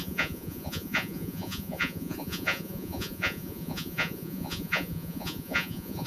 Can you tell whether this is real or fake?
fake